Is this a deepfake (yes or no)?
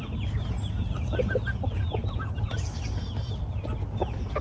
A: no